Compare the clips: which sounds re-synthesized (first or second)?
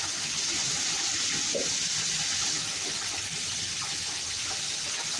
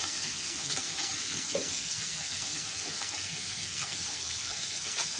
second